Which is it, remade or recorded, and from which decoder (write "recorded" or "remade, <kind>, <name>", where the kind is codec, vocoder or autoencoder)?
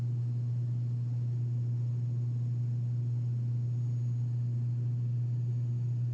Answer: recorded